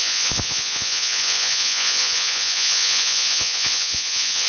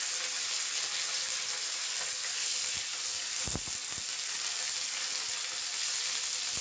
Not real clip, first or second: first